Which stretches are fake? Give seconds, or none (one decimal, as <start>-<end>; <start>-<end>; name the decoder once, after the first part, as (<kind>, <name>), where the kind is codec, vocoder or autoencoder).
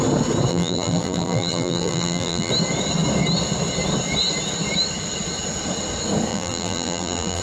0.5-2.5 (vocoder, BigVGAN v2); 6.3-7.4